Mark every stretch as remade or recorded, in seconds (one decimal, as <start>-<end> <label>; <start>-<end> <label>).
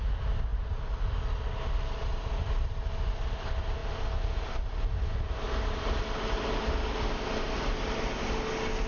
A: 0.0-8.9 recorded